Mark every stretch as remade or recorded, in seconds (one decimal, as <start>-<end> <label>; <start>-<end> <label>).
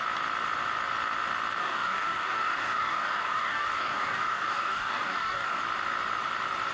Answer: 0.0-1.6 recorded; 1.6-5.6 remade; 5.6-6.7 recorded